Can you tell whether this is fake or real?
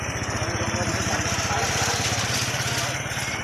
fake